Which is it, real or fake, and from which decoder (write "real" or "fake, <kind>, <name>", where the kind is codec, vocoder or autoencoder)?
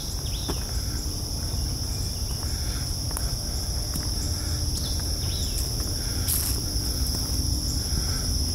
real